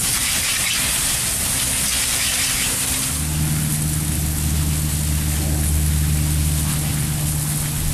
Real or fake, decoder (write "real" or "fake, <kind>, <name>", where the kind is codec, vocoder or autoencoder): real